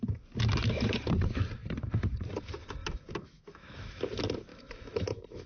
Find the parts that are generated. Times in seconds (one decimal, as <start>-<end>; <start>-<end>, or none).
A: 2.8-4.0; 4.5-5.5